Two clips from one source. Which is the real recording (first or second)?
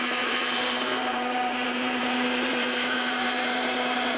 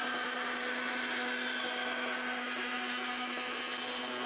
second